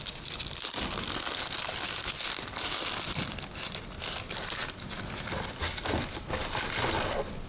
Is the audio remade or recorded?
recorded